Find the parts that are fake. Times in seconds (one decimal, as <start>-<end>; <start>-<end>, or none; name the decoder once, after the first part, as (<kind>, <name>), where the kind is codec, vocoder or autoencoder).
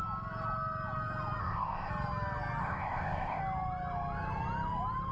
1.4-1.9 (codec, ZipCodec); 2.6-3.4